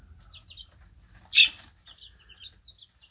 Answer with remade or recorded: recorded